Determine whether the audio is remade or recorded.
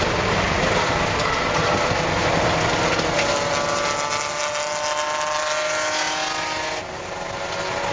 recorded